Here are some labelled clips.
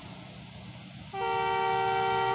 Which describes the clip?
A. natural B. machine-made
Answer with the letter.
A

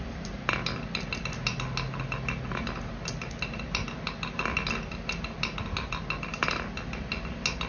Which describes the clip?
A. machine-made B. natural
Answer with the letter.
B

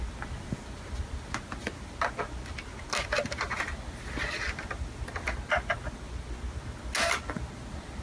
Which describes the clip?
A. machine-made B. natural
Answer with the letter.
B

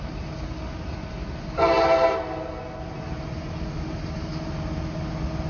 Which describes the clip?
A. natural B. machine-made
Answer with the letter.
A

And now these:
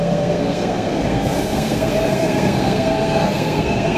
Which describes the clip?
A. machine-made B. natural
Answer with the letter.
A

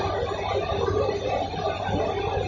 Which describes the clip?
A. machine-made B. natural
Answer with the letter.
B